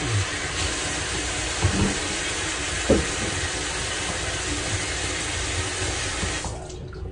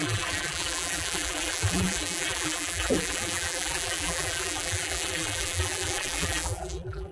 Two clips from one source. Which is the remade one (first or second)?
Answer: second